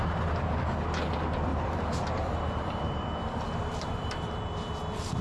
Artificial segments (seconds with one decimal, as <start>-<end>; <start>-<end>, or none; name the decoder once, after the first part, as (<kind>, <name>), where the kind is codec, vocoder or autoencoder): 1.5-4.6 (vocoder, BigVGAN v2)